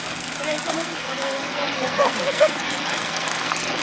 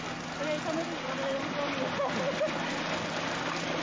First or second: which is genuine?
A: second